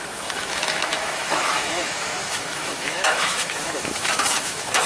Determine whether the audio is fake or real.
fake